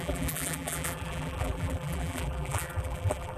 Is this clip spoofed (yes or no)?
yes